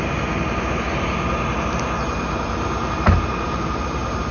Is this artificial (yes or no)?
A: no